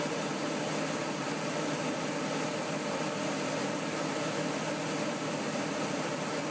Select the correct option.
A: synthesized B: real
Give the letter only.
B